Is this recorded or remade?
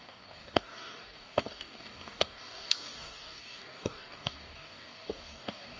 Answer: remade